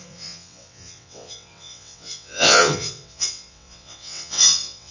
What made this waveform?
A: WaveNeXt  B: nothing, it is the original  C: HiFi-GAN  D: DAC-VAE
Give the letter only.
A